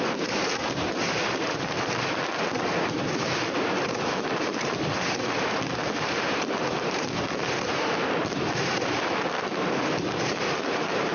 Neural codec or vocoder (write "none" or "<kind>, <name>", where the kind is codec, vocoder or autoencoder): vocoder, BigVGAN v2